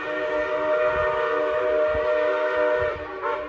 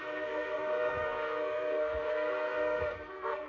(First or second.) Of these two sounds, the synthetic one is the second